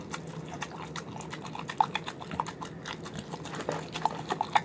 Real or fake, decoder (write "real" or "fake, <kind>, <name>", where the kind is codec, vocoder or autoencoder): real